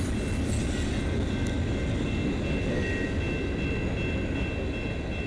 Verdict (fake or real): real